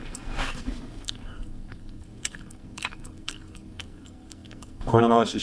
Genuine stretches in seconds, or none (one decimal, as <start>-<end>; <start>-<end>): none